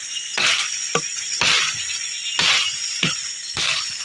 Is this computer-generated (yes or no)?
no